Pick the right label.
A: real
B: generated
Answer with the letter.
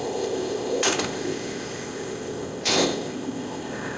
B